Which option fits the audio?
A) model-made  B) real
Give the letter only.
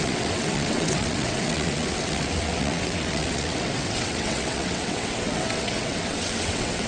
A